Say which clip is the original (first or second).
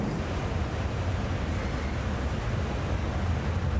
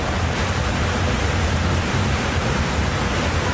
first